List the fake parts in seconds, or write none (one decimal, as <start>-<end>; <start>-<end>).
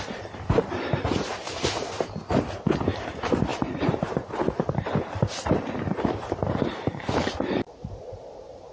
0.0-8.7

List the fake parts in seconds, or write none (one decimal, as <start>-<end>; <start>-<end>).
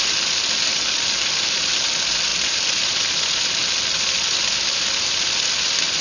2.3-3.1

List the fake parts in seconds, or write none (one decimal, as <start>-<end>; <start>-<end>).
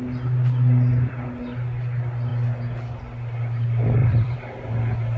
4.0-4.7